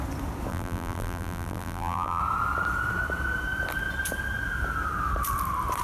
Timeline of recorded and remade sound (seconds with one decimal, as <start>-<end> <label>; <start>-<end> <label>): 0.0-0.5 recorded; 0.5-2.2 remade; 2.2-5.8 recorded